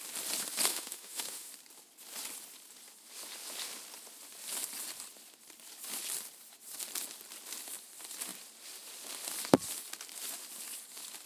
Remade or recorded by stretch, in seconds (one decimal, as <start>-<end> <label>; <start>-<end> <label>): 0.0-0.7 recorded; 0.7-1.5 remade; 1.5-11.3 recorded